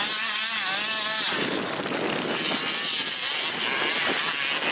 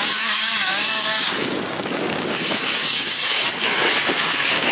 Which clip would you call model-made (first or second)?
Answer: second